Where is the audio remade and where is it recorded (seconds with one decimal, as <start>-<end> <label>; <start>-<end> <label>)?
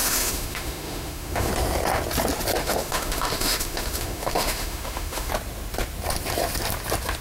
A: 0.0-1.5 remade; 1.5-2.6 recorded; 2.6-5.3 remade; 5.3-7.2 recorded